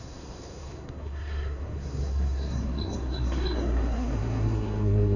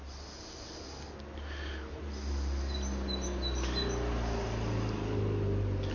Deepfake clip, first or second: first